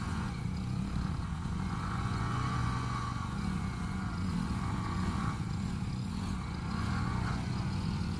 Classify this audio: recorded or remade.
remade